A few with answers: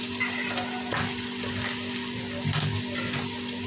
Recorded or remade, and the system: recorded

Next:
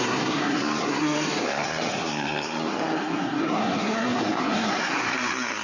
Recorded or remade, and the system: remade, codec, SNAC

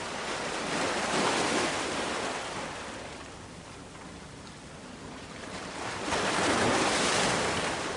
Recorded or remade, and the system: recorded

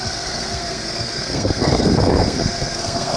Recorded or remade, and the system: remade, codec, SNAC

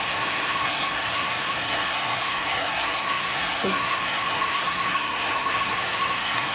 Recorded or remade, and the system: remade, codec, SNAC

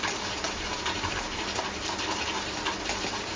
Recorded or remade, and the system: recorded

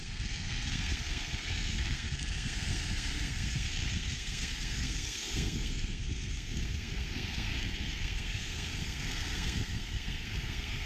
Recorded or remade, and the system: remade, codec, SNAC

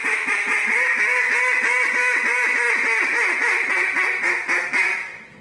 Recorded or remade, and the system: recorded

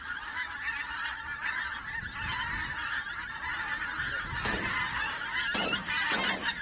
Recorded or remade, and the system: recorded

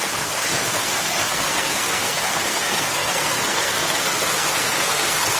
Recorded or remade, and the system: remade, codec, SNAC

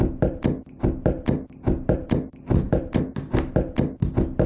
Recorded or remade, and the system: recorded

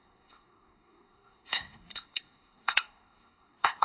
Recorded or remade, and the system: remade, codec, SNAC